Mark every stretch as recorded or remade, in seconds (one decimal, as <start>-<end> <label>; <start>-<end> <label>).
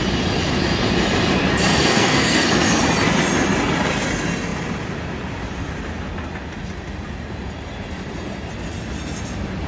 0.0-1.7 recorded; 1.7-2.8 remade; 2.8-9.7 recorded